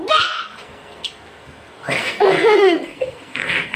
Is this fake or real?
fake